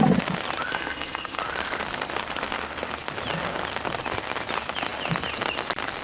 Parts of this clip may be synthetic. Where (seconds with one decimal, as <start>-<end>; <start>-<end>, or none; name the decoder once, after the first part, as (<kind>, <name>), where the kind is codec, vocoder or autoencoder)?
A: 0.7-1.4 (codec, SNAC)